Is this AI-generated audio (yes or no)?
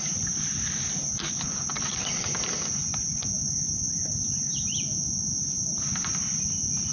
no